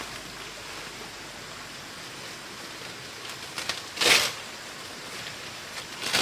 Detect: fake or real real